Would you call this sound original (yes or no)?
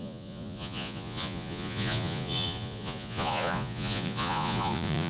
no